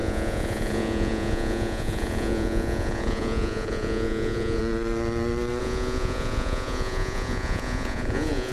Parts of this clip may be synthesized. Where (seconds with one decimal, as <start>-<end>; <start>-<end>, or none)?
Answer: 0.0-4.6; 5.6-8.5